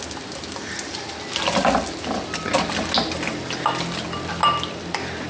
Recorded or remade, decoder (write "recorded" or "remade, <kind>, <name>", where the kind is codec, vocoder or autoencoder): recorded